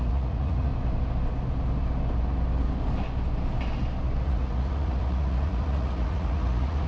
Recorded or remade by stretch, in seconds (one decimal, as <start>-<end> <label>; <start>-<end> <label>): 0.0-0.7 remade; 0.7-4.2 recorded; 4.2-6.9 remade